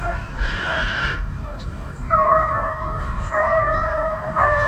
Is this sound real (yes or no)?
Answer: no